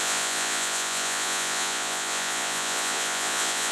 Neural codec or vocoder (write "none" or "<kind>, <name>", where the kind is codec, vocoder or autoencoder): vocoder, Vocos